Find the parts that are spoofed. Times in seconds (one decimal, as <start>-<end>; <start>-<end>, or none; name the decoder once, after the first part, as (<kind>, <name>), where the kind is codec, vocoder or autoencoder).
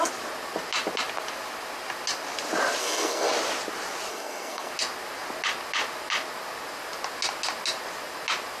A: 2.8-3.3 (codec, SNAC); 4.1-4.7